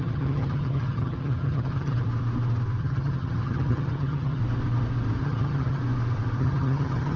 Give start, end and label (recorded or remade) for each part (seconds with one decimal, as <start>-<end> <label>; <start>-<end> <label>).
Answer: 0.0-2.0 remade; 2.0-2.8 recorded; 2.8-4.4 remade; 4.4-5.2 recorded; 5.2-5.8 remade; 5.8-6.4 recorded; 6.4-7.2 remade